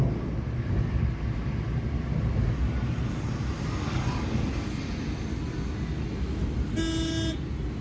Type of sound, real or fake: real